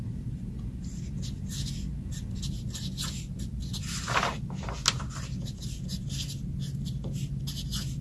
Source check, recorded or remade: recorded